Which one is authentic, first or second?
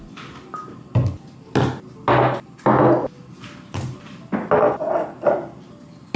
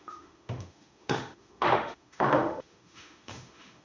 first